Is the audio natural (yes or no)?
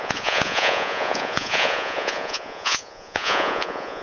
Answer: no